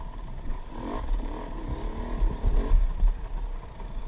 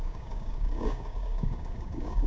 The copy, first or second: second